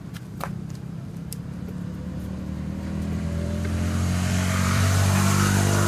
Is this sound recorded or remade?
remade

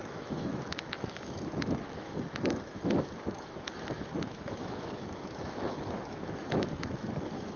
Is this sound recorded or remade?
remade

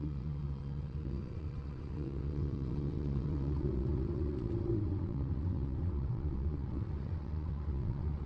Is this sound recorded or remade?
remade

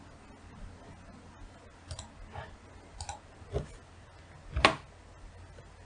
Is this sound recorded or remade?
recorded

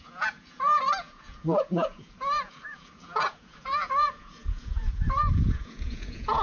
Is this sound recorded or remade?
remade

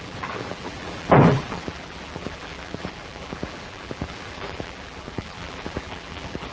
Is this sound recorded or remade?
remade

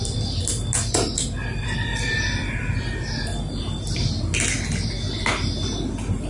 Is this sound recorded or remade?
recorded